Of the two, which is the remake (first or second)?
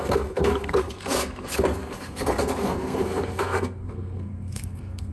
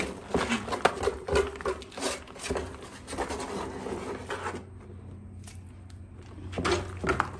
first